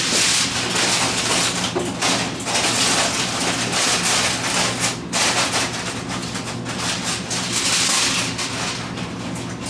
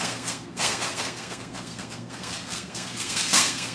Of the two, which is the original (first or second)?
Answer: first